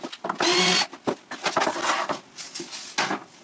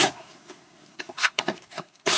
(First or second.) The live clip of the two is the first